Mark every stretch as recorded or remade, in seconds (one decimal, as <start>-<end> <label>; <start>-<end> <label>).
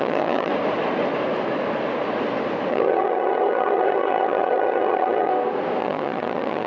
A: 0.0-0.5 remade; 0.5-2.7 recorded; 2.7-5.3 remade; 5.3-5.8 recorded; 5.8-6.7 remade